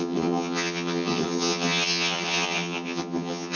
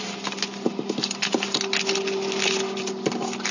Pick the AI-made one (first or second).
first